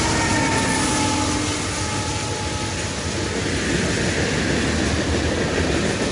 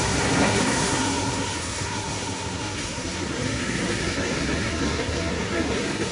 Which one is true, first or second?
first